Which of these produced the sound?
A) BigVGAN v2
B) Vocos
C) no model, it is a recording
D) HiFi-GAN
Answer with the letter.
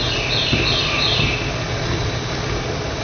C